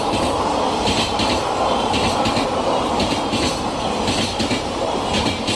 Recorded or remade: recorded